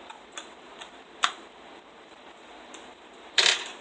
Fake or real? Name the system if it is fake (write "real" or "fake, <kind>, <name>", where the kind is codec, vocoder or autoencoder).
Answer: fake, vocoder, BigVGAN v2